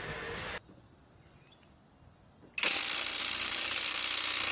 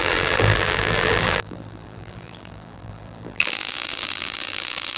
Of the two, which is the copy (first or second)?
second